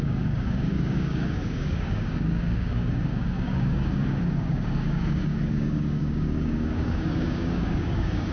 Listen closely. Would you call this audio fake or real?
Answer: fake